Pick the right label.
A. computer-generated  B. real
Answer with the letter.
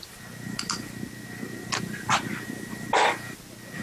B